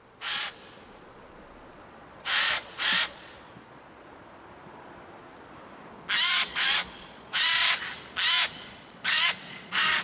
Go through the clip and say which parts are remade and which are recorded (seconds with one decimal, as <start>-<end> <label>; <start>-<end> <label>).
0.0-4.1 remade; 4.1-6.2 recorded; 6.2-7.6 remade; 7.6-8.5 recorded; 8.5-10.0 remade